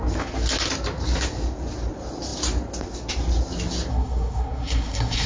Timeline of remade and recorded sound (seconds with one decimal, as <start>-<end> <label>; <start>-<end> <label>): 0.0-3.9 recorded; 3.9-5.3 remade